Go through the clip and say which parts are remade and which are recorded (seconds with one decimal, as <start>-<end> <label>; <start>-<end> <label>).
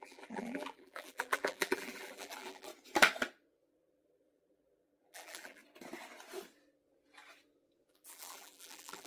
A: 0.0-2.7 remade; 2.7-3.7 recorded; 3.7-5.6 remade; 5.6-7.9 recorded; 7.9-9.1 remade